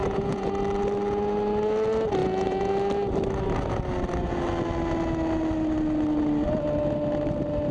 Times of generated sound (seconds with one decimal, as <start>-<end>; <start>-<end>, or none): 0.0-0.5; 2.2-2.7